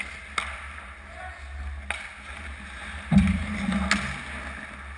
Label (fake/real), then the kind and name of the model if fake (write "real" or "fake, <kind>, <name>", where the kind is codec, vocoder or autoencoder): real